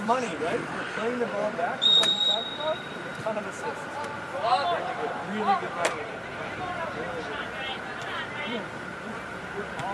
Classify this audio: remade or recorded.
remade